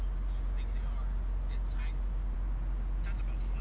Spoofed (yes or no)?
no